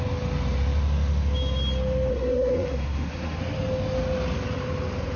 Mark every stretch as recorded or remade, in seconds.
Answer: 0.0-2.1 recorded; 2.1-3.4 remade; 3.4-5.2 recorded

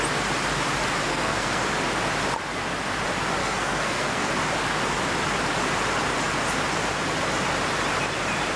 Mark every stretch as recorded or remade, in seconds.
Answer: 0.0-1.1 recorded; 1.1-1.6 remade; 1.6-3.4 recorded; 3.4-4.3 remade; 4.3-8.6 recorded

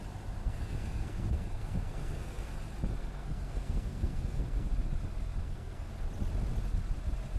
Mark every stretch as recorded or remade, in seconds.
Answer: 0.0-0.4 recorded; 0.4-2.5 remade; 2.5-3.0 recorded; 3.0-4.7 remade; 4.7-5.4 recorded; 5.4-5.9 remade; 5.9-7.4 recorded

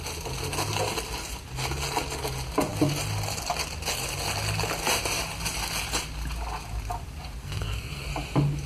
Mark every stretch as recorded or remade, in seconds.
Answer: 0.0-7.4 recorded; 7.4-8.1 remade; 8.1-8.7 recorded

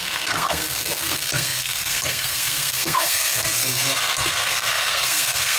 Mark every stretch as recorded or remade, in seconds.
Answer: 0.0-5.6 remade